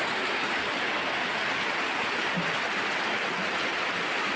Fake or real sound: fake